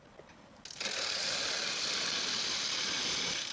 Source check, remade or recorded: recorded